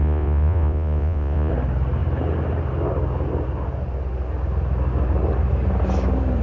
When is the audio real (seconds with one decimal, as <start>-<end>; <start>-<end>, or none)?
1.5-6.4